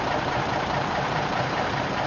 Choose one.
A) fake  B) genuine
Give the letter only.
A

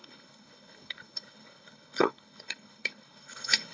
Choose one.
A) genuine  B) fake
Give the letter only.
B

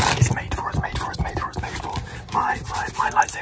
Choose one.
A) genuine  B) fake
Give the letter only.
A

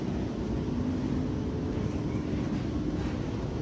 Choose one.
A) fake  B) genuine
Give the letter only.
B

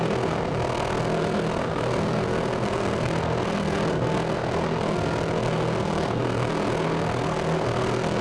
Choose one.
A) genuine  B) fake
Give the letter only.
B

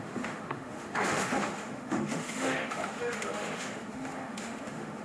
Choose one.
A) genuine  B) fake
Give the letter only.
B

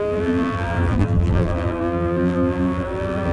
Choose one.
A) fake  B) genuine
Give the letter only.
A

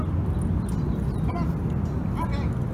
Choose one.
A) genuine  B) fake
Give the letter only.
A